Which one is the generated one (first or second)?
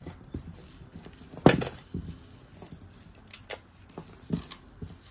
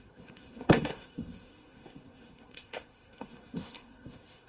second